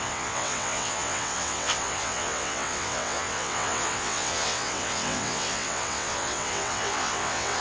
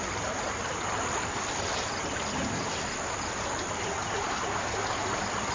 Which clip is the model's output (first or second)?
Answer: first